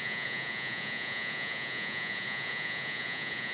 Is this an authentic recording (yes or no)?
no